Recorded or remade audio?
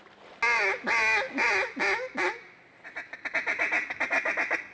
recorded